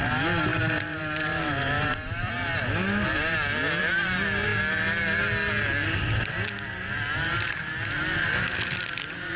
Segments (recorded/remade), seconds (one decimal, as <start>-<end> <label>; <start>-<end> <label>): 0.0-9.4 recorded